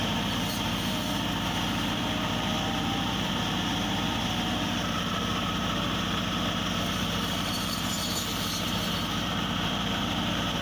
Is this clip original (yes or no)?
no